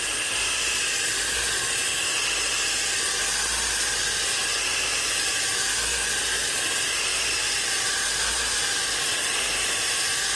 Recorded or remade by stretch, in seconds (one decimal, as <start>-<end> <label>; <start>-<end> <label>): 0.0-10.4 recorded